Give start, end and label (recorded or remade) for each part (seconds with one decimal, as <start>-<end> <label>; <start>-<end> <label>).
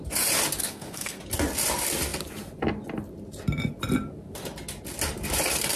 0.0-0.6 recorded; 0.6-1.2 remade; 1.2-5.8 recorded